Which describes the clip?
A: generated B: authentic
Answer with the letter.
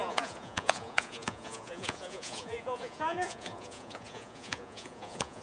A